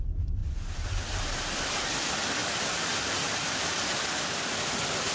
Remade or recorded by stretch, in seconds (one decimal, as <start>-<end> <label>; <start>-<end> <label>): 0.0-5.1 recorded